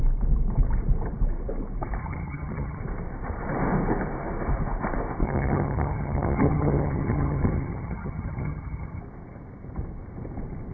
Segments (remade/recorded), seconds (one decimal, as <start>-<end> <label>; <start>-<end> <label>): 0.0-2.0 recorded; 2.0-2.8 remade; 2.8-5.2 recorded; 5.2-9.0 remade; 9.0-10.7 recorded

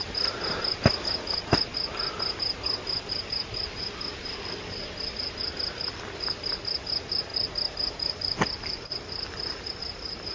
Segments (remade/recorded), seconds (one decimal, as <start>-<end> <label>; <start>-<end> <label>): 0.0-10.3 recorded

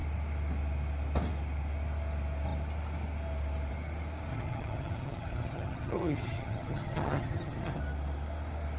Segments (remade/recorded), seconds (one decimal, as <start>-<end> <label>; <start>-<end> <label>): 0.0-4.3 recorded; 4.3-7.8 remade; 7.8-8.8 recorded

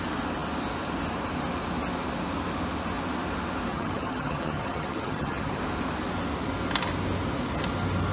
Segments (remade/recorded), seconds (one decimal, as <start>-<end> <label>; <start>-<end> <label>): 0.0-3.7 recorded; 3.7-5.6 remade; 5.6-8.1 recorded

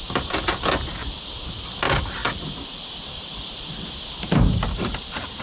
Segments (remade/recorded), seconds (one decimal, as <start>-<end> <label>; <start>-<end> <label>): 0.0-5.4 recorded

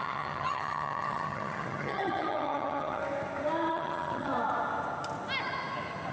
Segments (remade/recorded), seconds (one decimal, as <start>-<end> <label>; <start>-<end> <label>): 0.0-3.0 remade; 3.0-3.7 recorded; 3.7-4.3 remade; 4.3-6.1 recorded